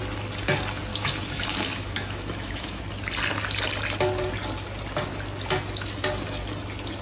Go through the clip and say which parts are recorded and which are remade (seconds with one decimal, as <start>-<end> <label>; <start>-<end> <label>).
0.0-0.9 recorded; 0.9-2.8 remade; 2.8-7.0 recorded